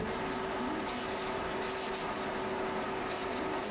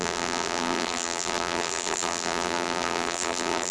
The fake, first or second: second